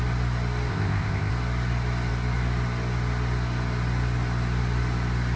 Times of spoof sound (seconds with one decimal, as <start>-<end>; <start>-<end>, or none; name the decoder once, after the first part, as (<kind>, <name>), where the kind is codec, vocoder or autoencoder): 0.7-1.3 (codec, ZipCodec)